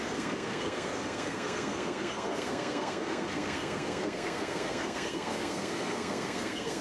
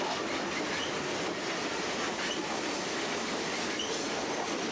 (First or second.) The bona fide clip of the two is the second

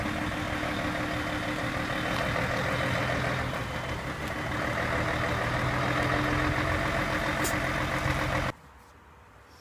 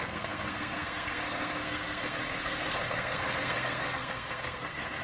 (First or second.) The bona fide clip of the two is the first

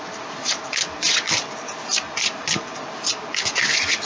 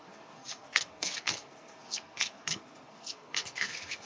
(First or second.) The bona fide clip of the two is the first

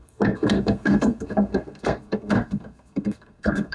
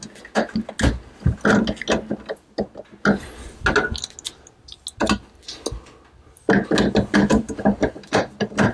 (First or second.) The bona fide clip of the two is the second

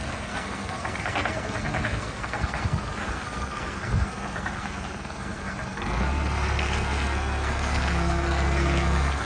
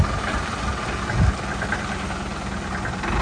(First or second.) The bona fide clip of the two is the second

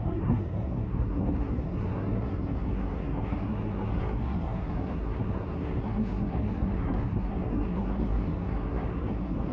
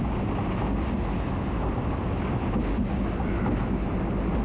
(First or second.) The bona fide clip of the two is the second